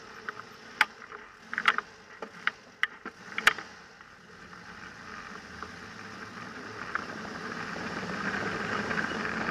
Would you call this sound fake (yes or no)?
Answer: no